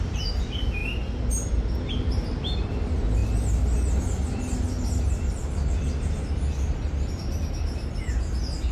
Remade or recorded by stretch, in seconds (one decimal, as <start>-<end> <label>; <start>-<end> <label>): 0.0-8.7 recorded